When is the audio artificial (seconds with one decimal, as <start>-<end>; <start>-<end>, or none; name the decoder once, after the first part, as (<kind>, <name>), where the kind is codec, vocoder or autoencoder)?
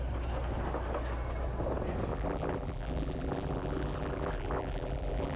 2.1-5.4 (vocoder, BigVGAN v2)